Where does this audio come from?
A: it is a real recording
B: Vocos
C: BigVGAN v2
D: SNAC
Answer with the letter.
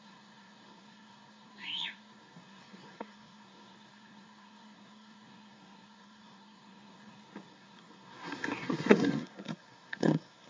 D